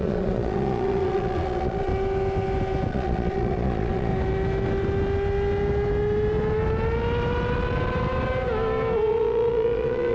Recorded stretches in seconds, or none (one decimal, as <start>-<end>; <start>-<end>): 1.9-2.9; 4.1-9.1